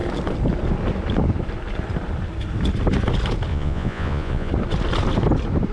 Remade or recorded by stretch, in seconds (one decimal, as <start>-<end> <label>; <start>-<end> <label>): 0.0-3.5 recorded; 3.5-4.5 remade; 4.5-5.7 recorded